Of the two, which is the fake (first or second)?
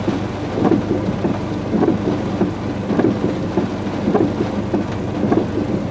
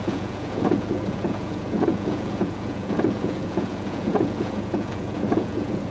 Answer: second